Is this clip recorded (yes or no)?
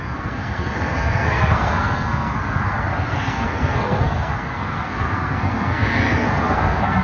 no